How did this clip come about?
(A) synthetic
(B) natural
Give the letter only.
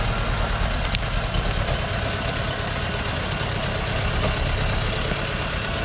B